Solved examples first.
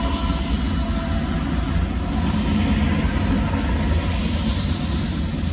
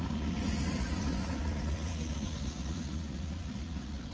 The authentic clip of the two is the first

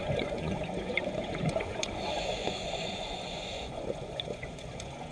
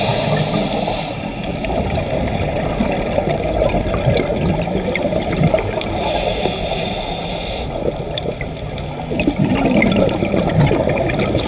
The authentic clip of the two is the second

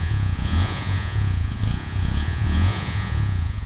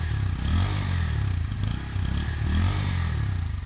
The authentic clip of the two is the second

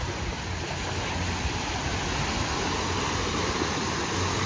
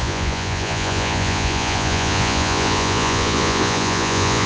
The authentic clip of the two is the first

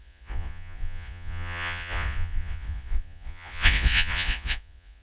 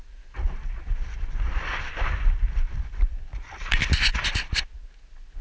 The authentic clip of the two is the second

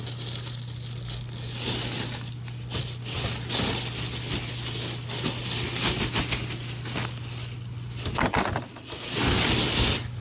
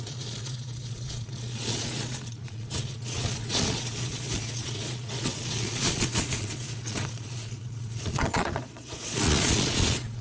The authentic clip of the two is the first